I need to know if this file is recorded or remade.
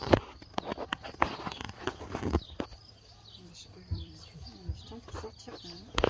remade